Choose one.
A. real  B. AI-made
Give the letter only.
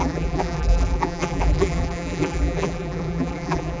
B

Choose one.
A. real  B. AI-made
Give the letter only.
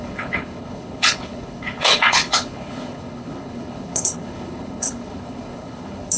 B